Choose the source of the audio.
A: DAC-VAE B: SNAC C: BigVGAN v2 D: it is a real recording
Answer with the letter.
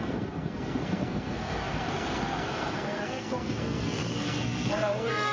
B